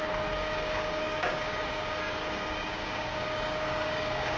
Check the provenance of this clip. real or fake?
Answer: fake